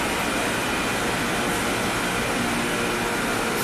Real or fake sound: real